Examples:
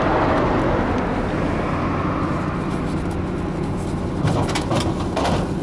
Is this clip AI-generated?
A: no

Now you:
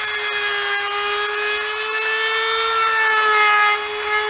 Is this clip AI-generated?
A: no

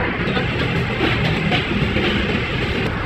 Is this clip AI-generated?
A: no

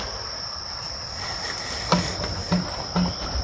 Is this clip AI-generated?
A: no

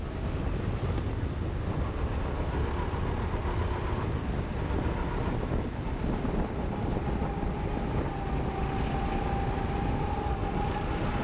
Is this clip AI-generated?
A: no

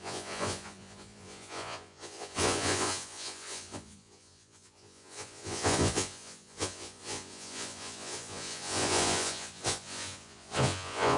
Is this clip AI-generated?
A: yes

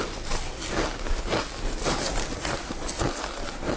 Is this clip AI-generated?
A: no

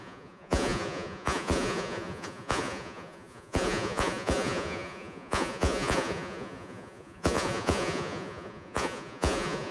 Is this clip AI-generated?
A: yes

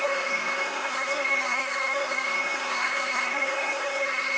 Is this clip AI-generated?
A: yes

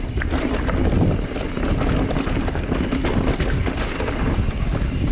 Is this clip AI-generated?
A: no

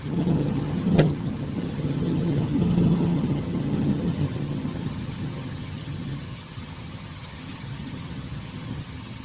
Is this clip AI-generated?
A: yes